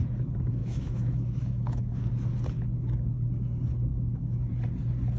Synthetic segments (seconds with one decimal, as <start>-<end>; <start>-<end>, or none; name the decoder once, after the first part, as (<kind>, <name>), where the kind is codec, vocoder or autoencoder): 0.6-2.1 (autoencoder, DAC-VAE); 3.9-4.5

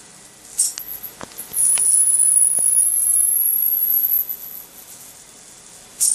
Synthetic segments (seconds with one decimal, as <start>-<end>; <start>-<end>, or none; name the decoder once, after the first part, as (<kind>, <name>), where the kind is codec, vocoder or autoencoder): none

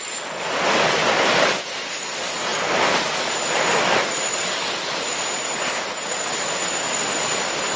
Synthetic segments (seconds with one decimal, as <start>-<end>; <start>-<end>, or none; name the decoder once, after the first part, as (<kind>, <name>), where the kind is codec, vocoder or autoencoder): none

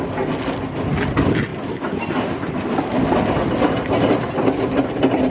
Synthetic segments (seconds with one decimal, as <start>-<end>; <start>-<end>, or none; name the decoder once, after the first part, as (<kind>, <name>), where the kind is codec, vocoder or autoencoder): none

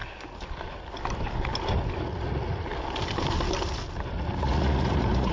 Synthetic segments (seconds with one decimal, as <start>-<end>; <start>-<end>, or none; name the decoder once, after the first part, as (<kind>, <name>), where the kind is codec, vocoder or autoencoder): 2.0-2.7 (vocoder, Vocos); 4.1-5.3